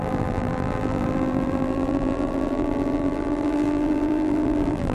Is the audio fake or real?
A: fake